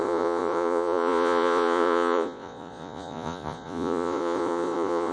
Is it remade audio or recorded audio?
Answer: remade